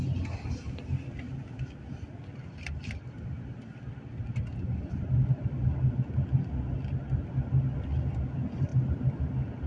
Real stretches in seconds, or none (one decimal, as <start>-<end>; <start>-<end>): 0.0-9.7